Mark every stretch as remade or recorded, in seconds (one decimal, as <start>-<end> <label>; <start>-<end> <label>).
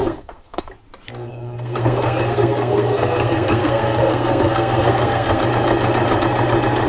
0.0-0.7 remade; 0.7-1.3 recorded; 1.3-5.4 remade; 5.4-6.9 recorded